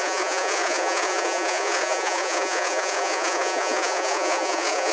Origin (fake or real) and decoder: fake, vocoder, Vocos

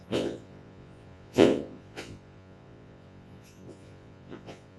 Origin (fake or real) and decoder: fake, vocoder, Vocos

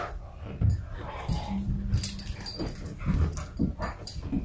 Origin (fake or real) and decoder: real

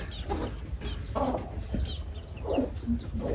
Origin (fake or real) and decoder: real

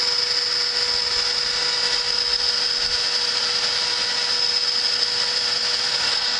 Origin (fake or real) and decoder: real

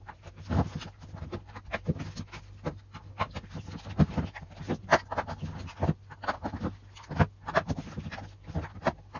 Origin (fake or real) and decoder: real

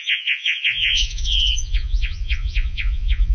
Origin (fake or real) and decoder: fake, vocoder, Vocos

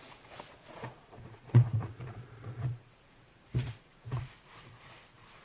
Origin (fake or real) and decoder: fake, vocoder, Vocos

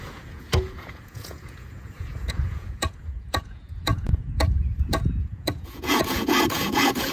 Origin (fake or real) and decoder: fake, vocoder, Vocos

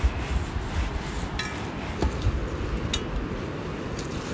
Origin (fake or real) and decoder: real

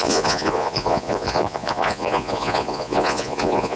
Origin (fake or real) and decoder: fake, vocoder, Vocos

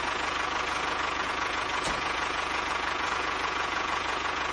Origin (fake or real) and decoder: fake, vocoder, Vocos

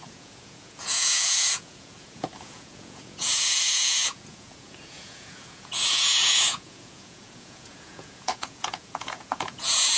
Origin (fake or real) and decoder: fake, vocoder, Vocos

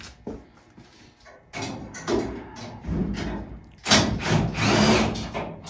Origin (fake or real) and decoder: real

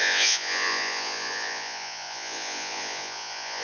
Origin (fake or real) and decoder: fake, vocoder, Vocos